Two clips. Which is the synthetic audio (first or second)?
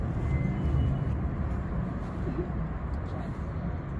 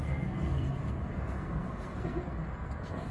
second